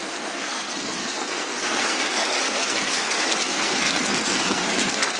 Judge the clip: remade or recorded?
remade